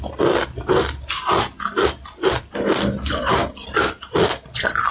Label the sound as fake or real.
real